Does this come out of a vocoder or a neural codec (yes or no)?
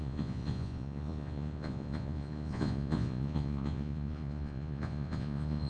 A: yes